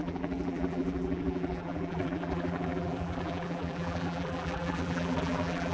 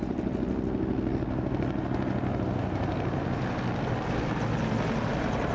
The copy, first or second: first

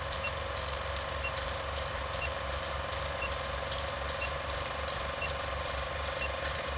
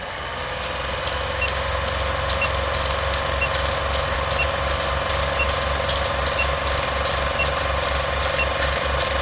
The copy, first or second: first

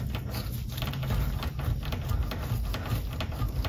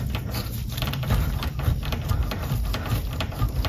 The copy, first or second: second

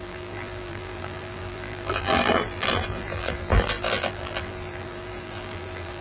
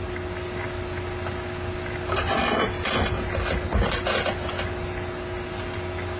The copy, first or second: first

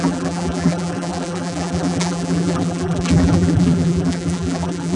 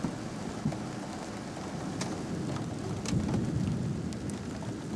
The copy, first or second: first